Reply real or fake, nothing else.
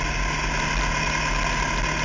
real